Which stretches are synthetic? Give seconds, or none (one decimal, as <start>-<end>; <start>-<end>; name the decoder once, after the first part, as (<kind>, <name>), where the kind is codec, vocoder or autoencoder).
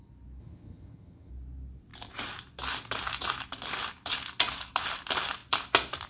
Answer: 0.4-1.3 (vocoder, HiFi-GAN)